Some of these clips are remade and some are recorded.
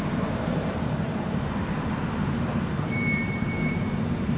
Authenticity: remade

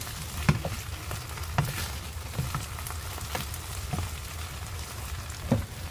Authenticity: recorded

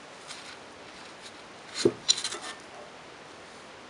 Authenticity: recorded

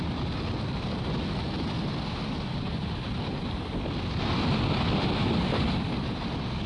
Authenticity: recorded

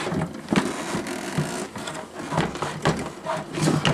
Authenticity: recorded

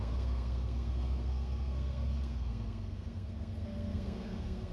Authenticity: remade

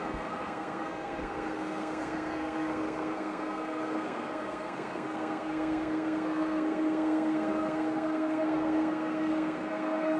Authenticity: remade